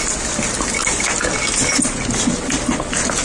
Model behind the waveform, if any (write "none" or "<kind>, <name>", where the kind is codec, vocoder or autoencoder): none